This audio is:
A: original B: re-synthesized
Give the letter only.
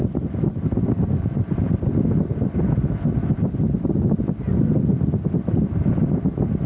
A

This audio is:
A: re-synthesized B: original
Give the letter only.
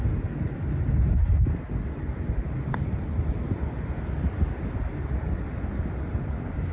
B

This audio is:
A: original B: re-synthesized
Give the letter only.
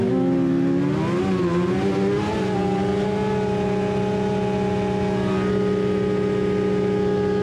A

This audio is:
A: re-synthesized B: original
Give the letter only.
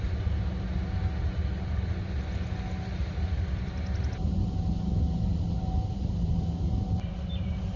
B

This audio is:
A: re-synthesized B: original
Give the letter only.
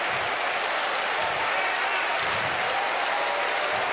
B